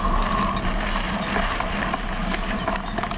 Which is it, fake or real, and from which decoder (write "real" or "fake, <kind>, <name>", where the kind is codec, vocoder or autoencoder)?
real